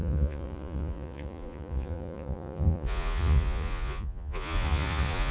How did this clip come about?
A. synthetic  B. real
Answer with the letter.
A